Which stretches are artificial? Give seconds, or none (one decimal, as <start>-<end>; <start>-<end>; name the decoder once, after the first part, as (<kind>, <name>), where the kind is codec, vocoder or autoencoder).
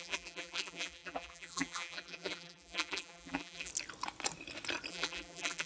0.0-3.7 (vocoder, BigVGAN v2); 4.9-5.7